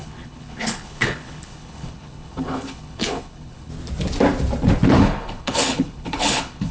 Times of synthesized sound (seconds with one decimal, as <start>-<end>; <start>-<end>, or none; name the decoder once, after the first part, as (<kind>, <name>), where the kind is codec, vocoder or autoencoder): 0.0-3.7 (codec, HILCodec); 4.9-6.7